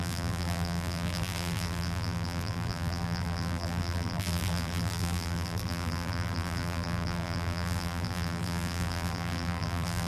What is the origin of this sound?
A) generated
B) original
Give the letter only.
A